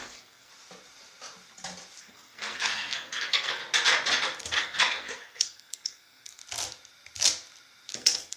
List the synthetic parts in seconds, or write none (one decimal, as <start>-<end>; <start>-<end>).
0.0-0.5; 2.0-3.6; 4.4-6.4; 7.9-8.4